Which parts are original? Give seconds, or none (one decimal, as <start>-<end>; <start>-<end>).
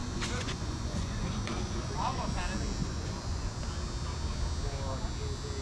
2.4-2.8; 3.6-5.6